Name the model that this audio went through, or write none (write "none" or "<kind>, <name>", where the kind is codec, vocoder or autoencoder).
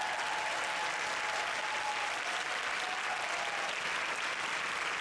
none